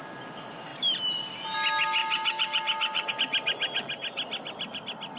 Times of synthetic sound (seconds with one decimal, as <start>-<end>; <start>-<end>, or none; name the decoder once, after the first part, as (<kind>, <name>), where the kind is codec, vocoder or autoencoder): 2.0-3.1 (vocoder, BigVGAN v2)